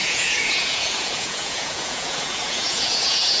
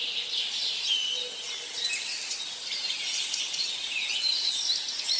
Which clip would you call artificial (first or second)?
first